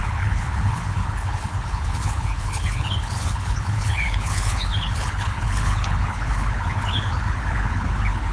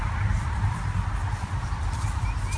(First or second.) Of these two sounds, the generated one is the first